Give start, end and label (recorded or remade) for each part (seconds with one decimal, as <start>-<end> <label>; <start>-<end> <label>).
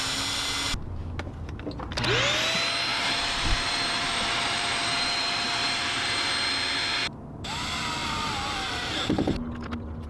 0.0-2.9 recorded; 2.9-6.3 remade; 6.3-8.0 recorded; 8.0-9.0 remade; 9.0-10.1 recorded